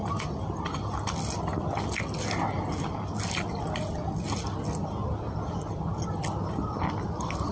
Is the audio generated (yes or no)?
no